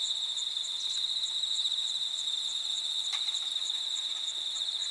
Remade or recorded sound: remade